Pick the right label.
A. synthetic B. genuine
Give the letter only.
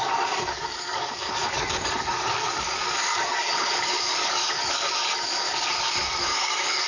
A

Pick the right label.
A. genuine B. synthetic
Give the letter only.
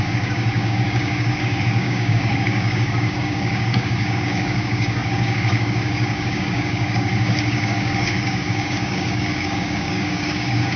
B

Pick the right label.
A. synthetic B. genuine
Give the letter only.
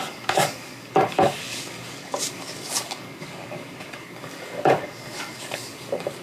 A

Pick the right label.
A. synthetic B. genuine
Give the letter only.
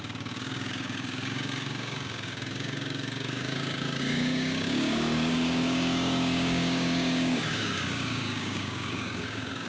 A